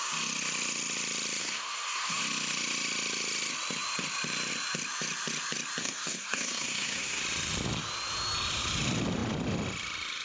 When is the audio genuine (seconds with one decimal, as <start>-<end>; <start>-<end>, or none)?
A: 0.0-1.4; 2.2-5.8; 7.2-10.2